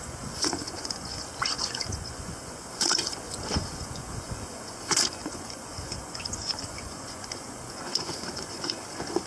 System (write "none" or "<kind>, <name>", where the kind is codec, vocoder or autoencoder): vocoder, Vocos